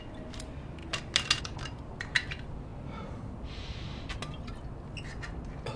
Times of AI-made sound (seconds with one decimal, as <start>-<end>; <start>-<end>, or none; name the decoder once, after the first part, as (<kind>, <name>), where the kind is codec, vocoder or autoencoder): none